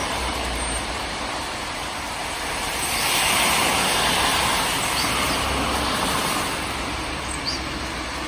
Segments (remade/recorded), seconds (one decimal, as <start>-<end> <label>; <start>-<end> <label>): 0.0-1.3 remade; 1.3-2.2 recorded; 2.2-3.6 remade; 3.6-8.3 recorded